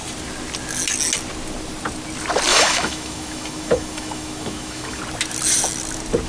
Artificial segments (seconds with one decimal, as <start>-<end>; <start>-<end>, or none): 2.5-5.0